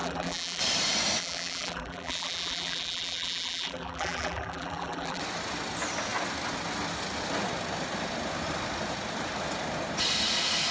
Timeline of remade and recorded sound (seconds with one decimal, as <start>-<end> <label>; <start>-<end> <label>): 0.0-0.6 remade; 0.6-1.2 recorded; 1.2-5.2 remade; 5.2-10.7 recorded